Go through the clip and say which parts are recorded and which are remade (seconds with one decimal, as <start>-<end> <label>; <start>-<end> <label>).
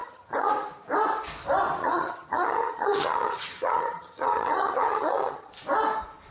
0.0-0.5 remade; 0.5-1.8 recorded; 1.8-5.5 remade; 5.5-6.3 recorded